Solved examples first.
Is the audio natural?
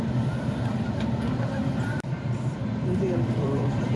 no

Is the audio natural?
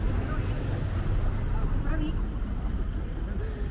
yes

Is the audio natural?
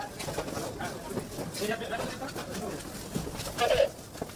yes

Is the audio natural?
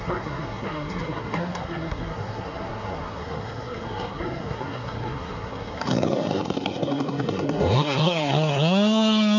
no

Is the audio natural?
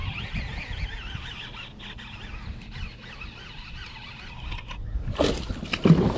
yes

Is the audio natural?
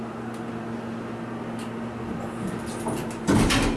yes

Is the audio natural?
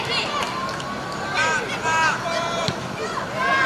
yes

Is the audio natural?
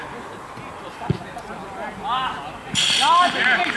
yes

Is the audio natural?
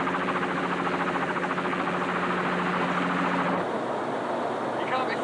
yes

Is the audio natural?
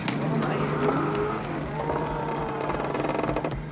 yes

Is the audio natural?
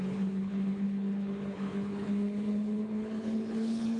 no